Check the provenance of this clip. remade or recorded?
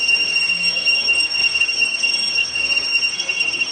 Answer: remade